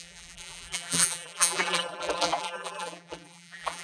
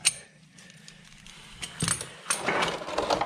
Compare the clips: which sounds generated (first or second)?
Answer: first